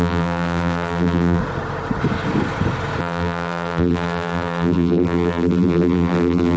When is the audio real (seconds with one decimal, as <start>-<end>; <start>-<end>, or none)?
1.4-3.0